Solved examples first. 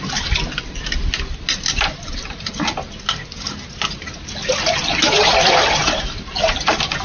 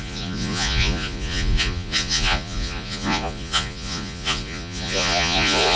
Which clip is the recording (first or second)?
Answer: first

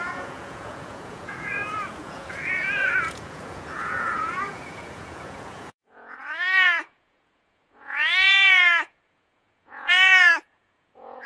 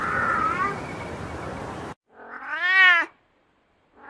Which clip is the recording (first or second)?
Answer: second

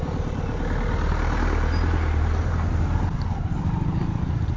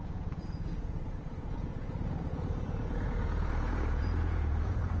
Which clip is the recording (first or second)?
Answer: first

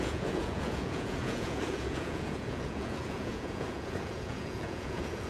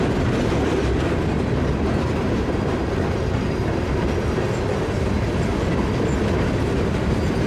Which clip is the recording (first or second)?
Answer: second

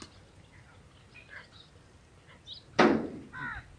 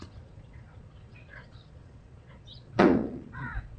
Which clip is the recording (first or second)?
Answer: first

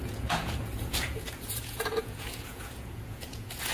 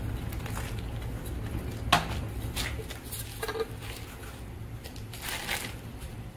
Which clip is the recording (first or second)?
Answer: second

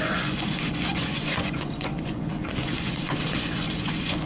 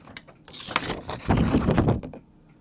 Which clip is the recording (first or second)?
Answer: second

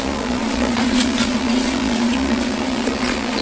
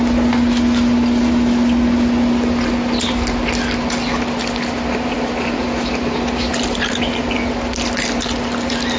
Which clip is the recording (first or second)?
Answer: second